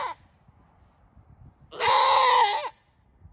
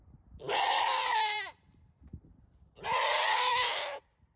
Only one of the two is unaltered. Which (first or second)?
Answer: first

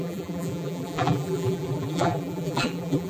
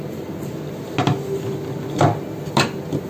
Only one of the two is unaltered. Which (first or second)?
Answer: second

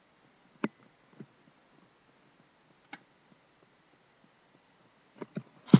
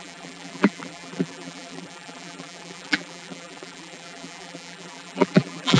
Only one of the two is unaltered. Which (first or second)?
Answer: first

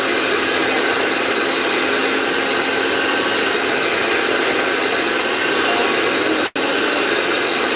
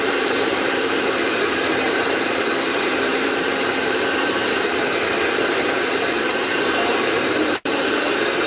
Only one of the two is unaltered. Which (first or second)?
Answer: first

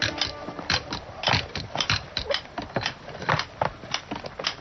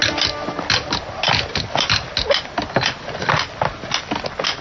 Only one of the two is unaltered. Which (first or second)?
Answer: second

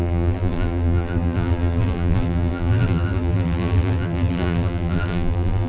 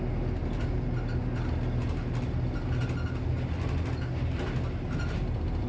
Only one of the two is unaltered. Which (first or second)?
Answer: second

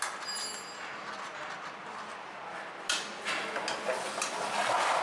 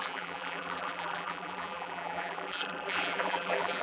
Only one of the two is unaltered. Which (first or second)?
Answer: first